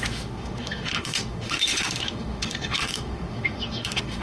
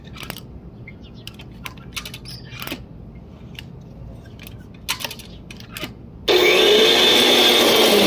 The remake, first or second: first